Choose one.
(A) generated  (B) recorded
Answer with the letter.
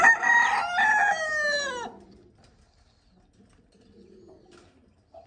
B